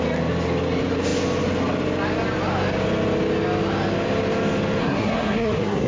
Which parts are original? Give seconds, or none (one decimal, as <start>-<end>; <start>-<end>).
0.0-4.8